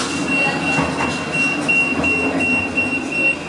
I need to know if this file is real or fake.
real